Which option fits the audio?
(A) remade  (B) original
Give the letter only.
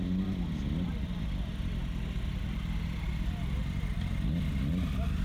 B